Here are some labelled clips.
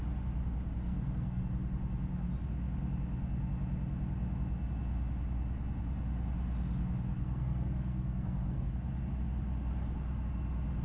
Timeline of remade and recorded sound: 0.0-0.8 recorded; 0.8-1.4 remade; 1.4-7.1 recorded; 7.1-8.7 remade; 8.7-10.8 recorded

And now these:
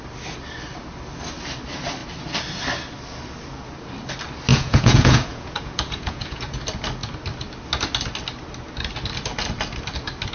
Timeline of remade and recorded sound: 0.0-4.5 recorded; 4.5-6.6 remade; 6.6-10.3 recorded